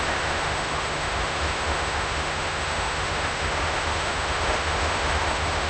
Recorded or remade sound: remade